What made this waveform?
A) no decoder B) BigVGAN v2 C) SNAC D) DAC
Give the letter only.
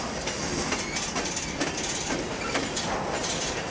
A